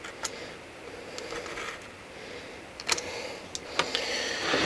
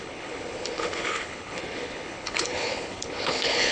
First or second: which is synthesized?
second